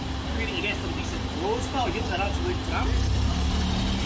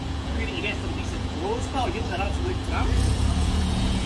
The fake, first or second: second